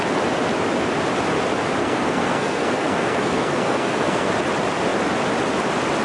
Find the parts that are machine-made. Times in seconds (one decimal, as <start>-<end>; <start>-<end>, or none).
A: 1.8-4.3